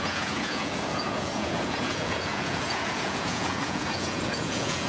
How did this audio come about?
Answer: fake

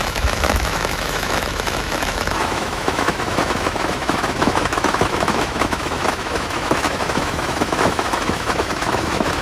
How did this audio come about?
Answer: fake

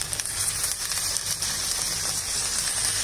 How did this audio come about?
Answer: fake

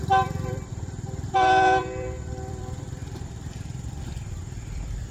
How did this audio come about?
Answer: fake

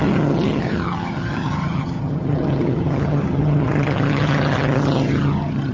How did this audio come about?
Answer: fake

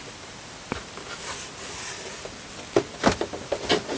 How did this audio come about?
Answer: real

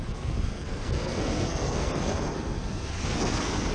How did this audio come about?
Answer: fake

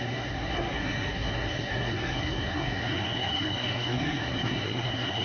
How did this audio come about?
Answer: fake